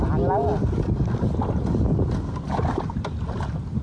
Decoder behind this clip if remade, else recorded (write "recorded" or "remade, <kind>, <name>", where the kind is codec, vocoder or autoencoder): recorded